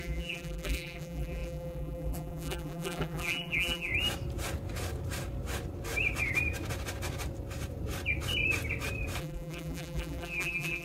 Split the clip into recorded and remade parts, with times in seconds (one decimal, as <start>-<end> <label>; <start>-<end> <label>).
0.0-3.9 remade; 3.9-9.2 recorded; 9.2-10.8 remade